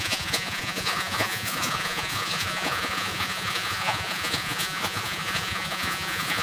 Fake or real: fake